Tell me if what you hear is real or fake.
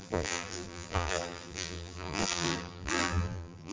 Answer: fake